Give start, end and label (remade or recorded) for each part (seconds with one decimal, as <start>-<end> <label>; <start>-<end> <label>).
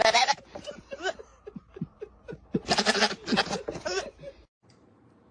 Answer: 0.0-1.3 remade; 1.3-4.5 recorded; 4.5-5.3 remade